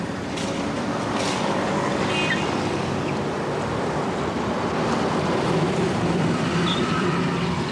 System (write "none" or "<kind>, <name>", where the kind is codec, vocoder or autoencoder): vocoder, BigVGAN v2